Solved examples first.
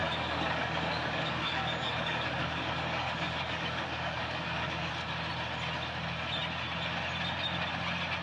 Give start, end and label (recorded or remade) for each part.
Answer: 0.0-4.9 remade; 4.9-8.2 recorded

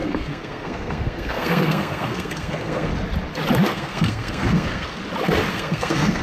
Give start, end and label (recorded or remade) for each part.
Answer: 0.0-2.9 remade; 2.9-3.7 recorded; 3.7-5.0 remade; 5.0-5.5 recorded; 5.5-6.2 remade

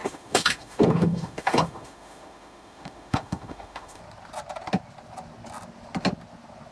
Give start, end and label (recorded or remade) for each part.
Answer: 0.0-4.0 remade; 4.0-6.7 recorded

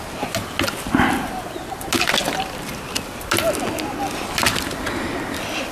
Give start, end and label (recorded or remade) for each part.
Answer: 0.0-5.7 recorded

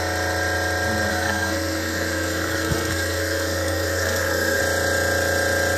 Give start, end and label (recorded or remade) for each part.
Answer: 0.0-1.1 recorded; 1.1-4.6 remade; 4.6-5.8 recorded

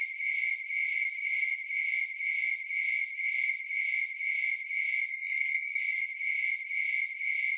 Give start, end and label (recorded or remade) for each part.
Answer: 0.0-5.1 recorded; 5.1-5.8 remade; 5.8-7.6 recorded

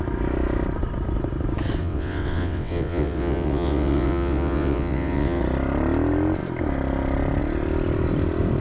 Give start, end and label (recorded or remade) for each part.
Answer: 0.0-1.8 recorded; 1.8-5.4 remade; 5.4-8.6 recorded